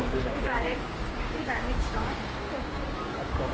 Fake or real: fake